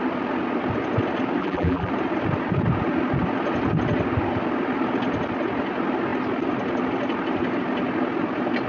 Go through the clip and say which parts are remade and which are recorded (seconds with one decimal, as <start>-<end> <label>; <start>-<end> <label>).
0.0-1.4 recorded; 1.4-1.9 remade; 1.9-8.7 recorded